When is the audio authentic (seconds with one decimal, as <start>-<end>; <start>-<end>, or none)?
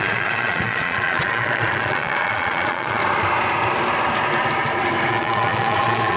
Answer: 3.0-5.1